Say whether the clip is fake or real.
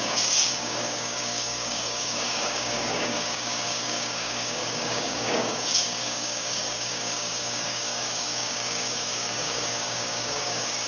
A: fake